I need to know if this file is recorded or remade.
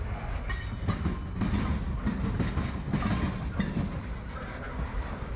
recorded